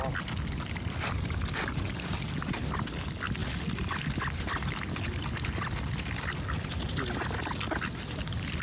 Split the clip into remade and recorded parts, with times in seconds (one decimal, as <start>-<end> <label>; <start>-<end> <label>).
0.0-8.6 recorded